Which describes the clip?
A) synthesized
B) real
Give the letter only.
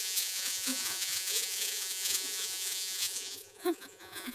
A